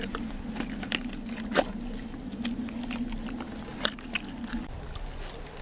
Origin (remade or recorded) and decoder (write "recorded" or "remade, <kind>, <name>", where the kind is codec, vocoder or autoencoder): recorded